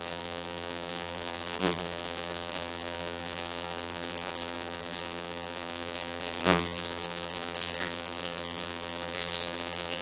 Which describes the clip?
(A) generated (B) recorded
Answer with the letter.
A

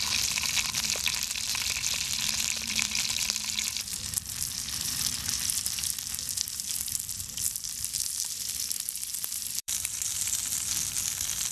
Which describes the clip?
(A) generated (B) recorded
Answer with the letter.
A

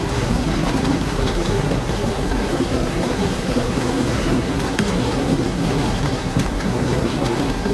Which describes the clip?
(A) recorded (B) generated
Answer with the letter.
B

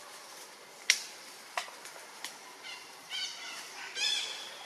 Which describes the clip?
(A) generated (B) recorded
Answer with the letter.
B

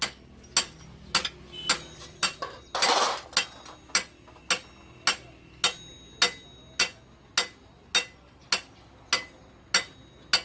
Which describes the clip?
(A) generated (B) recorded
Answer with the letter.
B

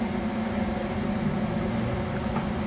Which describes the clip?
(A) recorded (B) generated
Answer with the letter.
A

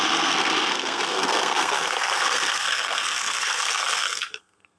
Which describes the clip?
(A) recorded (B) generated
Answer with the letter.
B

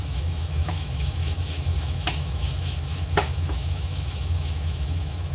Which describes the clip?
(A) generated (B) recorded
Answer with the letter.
A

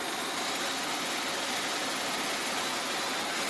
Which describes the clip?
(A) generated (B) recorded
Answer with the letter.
B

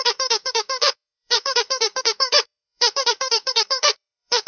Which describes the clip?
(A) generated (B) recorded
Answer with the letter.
A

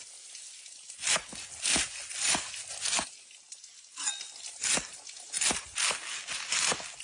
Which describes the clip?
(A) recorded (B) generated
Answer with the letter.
A